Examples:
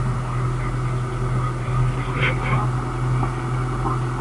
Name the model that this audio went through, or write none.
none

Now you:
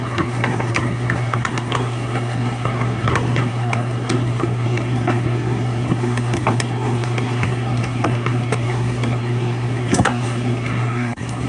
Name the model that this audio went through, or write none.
codec, SNAC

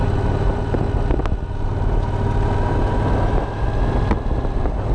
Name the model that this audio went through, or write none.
none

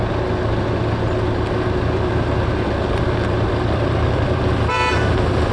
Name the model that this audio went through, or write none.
vocoder, BigVGAN v2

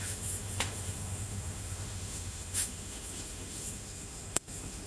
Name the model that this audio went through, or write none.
autoencoder, DAC-VAE